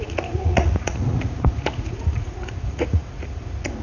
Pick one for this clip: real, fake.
fake